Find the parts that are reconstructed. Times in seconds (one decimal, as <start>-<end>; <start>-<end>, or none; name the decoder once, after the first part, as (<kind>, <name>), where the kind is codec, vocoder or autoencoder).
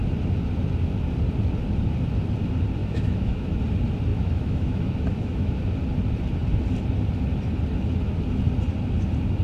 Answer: 2.8-3.6 (autoencoder, DAC-VAE); 4.1-5.6